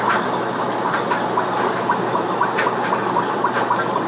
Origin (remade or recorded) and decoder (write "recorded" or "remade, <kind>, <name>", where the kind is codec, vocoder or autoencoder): recorded